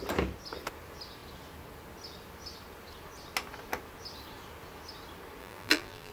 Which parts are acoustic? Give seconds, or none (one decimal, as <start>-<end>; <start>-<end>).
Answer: 0.0-5.4